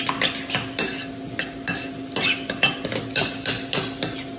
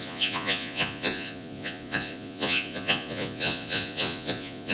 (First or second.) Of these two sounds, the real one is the first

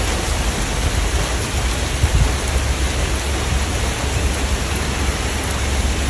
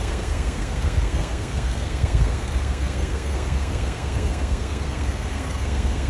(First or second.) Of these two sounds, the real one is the first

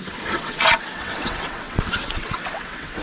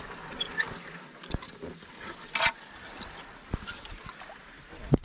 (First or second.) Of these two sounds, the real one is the second